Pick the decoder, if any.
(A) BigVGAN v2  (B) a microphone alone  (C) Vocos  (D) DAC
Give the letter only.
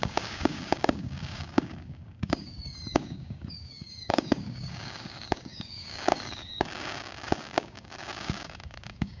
D